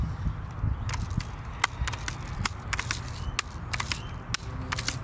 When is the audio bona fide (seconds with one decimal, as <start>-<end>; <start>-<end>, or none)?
0.0-5.0